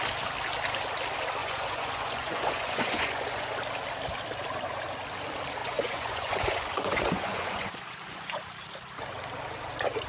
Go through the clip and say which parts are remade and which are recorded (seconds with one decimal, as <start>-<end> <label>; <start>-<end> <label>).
0.0-1.4 recorded; 1.4-3.5 remade; 3.5-5.6 recorded; 5.6-8.4 remade; 8.4-10.1 recorded